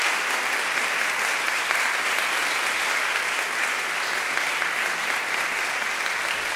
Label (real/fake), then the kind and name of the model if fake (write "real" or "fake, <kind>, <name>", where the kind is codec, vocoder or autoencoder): real